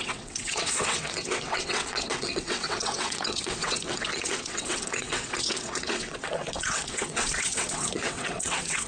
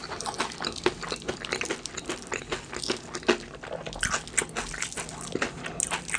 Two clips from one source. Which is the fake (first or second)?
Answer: first